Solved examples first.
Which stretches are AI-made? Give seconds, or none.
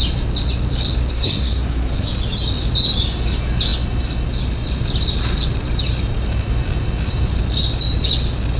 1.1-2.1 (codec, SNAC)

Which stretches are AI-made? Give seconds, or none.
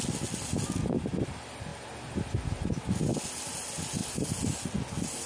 none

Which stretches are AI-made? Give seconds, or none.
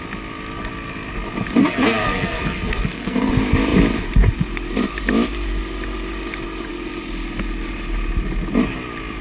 1.6-3.3 (codec, SNAC)